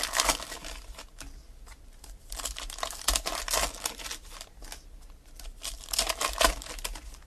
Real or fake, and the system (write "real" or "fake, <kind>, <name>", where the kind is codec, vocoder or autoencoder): real